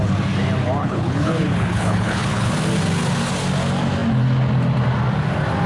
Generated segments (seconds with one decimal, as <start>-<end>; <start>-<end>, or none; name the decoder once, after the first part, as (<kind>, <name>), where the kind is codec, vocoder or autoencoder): 0.8-2.5 (codec, HILCodec)

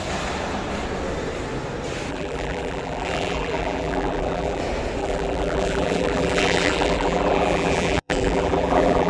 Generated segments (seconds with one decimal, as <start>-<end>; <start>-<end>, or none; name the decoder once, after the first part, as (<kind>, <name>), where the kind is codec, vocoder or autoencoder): 2.1-4.6 (vocoder, BigVGAN v2); 5.0-9.1

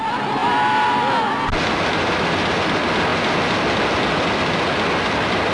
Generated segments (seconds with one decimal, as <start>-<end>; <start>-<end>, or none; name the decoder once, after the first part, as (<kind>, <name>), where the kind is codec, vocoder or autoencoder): none

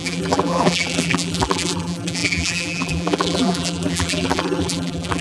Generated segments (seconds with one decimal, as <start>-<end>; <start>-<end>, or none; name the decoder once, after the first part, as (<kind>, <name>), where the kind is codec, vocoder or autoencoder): 0.0-5.2 (vocoder, BigVGAN v2)

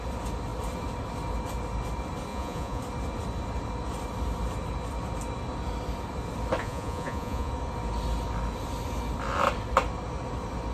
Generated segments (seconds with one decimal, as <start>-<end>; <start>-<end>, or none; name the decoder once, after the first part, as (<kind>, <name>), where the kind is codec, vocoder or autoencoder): 2.3-2.8 (vocoder, Vocos); 6.6-7.5